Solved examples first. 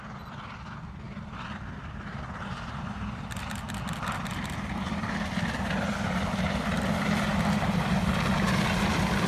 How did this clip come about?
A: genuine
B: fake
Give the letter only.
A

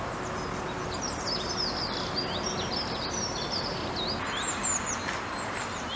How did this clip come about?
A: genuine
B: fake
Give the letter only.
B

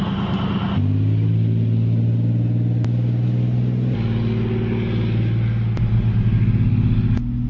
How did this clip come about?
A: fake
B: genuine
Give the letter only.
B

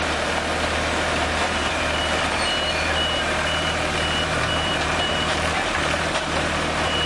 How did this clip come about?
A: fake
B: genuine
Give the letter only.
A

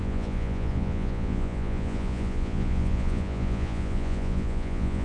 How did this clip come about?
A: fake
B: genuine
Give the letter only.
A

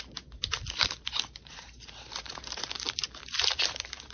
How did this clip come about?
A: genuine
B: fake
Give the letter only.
B